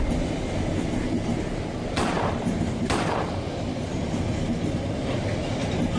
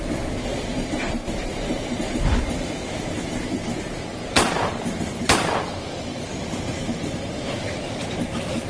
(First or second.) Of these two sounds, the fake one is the second